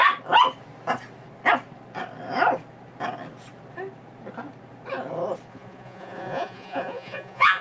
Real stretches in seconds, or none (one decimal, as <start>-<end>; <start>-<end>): 0.0-5.5